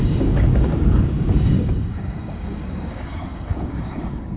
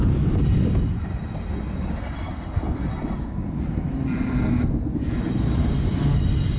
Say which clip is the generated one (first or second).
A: first